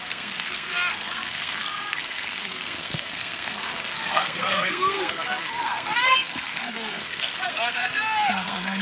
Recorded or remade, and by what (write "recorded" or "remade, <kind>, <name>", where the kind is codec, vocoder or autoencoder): remade, codec, SNAC